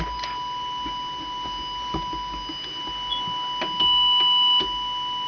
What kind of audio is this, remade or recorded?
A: recorded